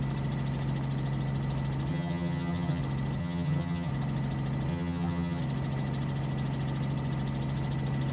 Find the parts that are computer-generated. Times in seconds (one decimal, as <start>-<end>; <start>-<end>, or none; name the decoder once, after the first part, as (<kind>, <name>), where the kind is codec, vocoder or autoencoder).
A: 1.9-2.8 (vocoder, HiFi-GAN); 3.2-3.9; 4.7-5.4